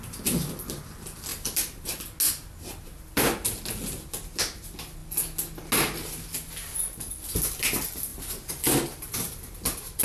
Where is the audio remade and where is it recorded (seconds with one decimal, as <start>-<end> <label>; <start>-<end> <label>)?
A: 0.0-1.3 recorded; 1.3-2.0 remade; 2.0-10.0 recorded